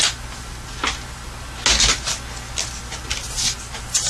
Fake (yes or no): no